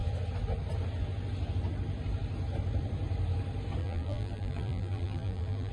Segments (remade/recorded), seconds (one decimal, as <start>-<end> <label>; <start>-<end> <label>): 0.0-3.8 recorded; 3.8-5.7 remade